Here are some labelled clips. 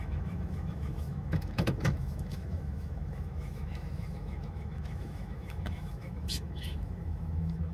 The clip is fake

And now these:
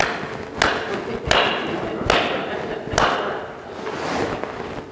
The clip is real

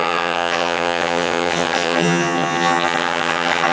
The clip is fake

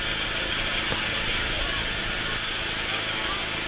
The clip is real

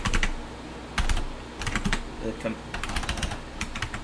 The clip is real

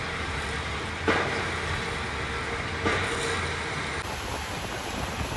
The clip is real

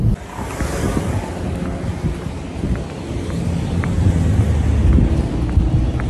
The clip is real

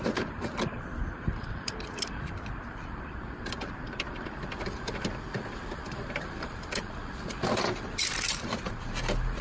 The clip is fake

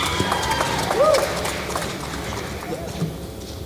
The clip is real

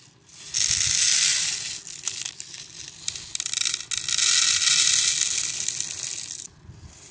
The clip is real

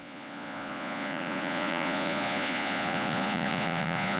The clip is fake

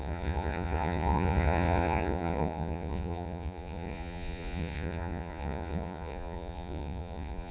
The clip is fake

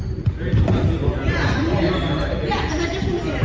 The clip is real